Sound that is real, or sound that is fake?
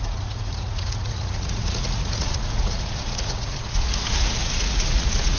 fake